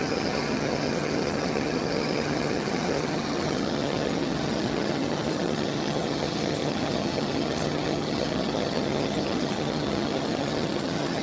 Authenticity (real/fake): fake